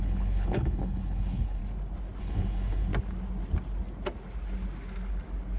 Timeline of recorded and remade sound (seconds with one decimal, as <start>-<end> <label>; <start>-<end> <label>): 0.0-1.6 remade; 1.6-2.2 recorded; 2.2-2.9 remade; 2.9-5.6 recorded